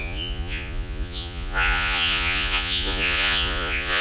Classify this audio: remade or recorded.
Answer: remade